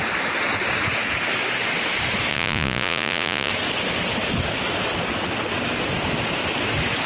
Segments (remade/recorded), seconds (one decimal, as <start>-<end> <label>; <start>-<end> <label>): 0.0-2.3 recorded; 2.3-3.5 remade; 3.5-7.1 recorded